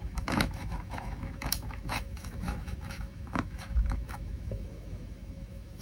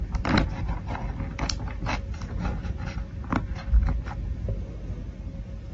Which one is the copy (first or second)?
first